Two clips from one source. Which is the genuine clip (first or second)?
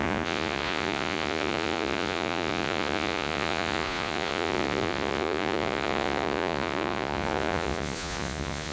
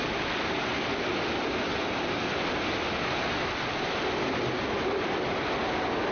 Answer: second